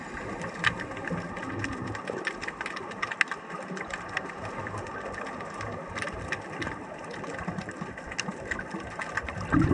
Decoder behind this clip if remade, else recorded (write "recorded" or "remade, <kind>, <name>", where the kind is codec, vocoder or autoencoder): recorded